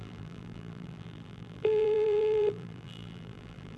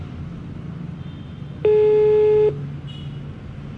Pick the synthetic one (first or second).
first